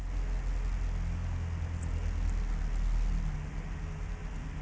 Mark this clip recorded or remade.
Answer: recorded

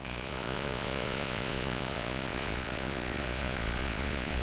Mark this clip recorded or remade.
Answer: remade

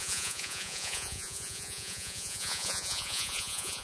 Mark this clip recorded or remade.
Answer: remade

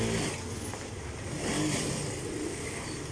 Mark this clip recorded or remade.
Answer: recorded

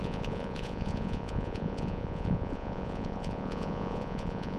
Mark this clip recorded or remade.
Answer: remade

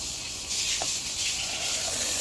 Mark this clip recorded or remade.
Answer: remade